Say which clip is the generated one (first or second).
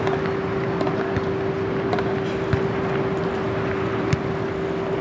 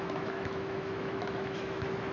second